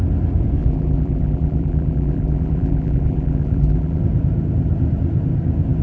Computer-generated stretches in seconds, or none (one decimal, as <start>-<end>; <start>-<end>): 0.6-4.0